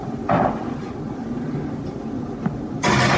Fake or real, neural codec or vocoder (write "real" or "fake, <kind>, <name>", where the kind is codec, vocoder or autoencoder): real